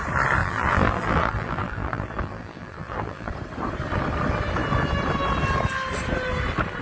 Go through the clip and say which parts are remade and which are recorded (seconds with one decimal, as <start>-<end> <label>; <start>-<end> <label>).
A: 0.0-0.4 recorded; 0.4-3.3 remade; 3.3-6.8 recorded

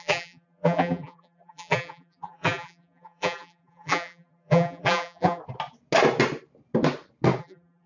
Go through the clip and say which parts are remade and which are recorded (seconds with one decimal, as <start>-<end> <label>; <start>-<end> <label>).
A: 0.0-5.4 remade; 5.4-7.4 recorded; 7.4-7.9 remade

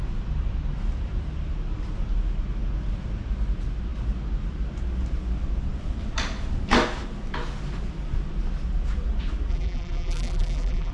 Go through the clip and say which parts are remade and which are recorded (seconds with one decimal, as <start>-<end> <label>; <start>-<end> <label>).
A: 0.0-9.5 recorded; 9.5-10.9 remade

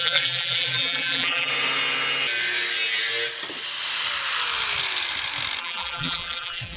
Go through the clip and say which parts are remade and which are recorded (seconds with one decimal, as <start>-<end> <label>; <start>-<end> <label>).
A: 0.0-1.5 remade; 1.5-5.6 recorded; 5.6-6.8 remade